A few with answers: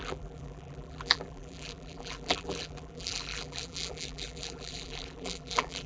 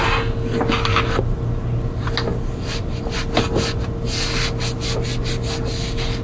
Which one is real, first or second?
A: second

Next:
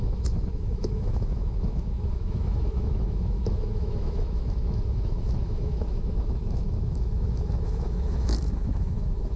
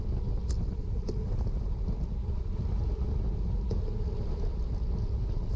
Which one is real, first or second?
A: second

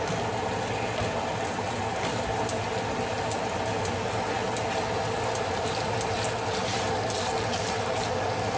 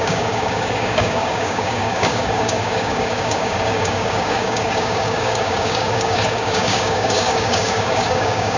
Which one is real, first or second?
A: first